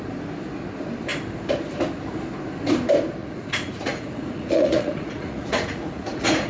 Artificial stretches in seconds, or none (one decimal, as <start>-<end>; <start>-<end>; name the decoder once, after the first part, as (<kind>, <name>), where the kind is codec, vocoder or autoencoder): 3.2-6.5 (vocoder, Vocos)